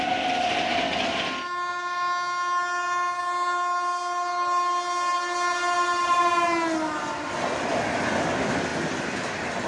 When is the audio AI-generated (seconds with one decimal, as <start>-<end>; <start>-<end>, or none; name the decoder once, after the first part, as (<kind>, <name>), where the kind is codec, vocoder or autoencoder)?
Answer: none